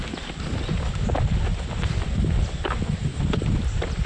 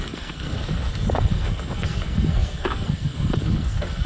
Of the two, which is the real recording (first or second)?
first